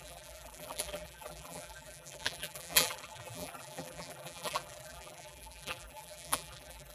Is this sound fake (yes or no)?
yes